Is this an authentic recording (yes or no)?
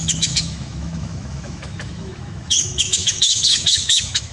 no